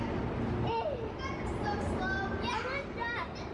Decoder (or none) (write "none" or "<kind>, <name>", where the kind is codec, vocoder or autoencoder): none